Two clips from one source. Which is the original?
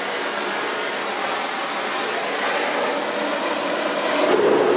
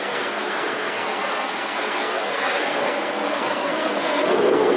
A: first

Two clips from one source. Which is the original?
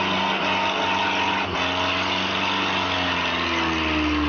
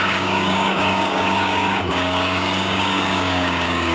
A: first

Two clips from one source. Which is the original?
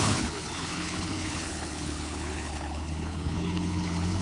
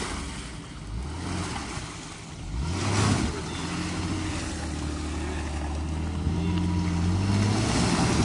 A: second